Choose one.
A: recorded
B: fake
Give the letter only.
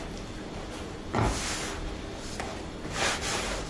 A